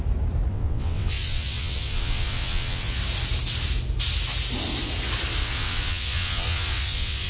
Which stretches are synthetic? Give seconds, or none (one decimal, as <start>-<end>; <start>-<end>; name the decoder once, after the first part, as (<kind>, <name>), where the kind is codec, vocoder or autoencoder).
0.5-3.0 (vocoder, WaveNeXt); 5.4-7.3